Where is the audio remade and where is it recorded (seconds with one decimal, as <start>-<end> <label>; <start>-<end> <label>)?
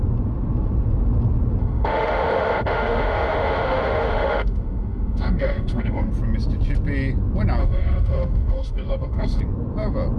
0.0-1.6 recorded; 1.6-6.1 remade; 6.1-7.6 recorded; 7.6-9.4 remade; 9.4-10.2 recorded